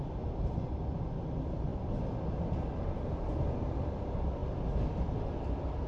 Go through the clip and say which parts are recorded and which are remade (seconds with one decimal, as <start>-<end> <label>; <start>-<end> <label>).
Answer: 0.0-5.9 recorded